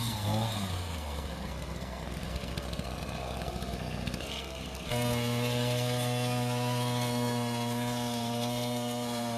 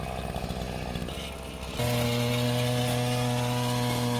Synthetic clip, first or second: first